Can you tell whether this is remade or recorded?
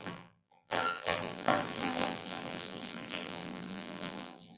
remade